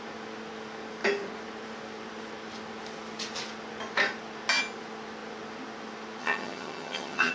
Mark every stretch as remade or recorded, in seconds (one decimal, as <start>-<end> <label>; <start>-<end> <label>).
0.0-6.2 recorded; 6.2-7.3 remade